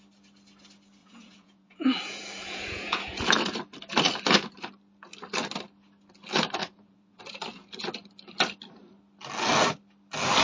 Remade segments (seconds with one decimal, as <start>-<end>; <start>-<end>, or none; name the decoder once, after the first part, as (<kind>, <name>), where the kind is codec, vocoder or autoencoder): 1.0-3.2 (vocoder, Vocos); 6.6-7.2